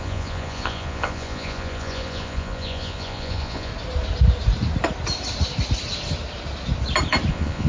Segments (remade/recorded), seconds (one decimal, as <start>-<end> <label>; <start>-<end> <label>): 0.0-3.7 remade; 3.7-7.3 recorded; 7.3-7.7 remade